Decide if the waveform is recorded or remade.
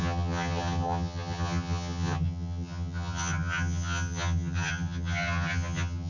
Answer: remade